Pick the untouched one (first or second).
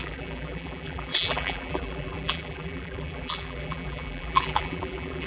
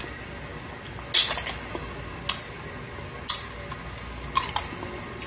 second